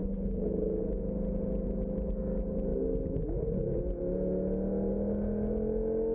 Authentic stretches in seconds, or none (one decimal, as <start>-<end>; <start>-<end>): 0.8-6.1